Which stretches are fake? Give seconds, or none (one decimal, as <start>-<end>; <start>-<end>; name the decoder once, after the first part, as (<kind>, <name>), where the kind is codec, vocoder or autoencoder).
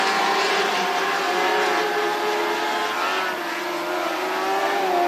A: none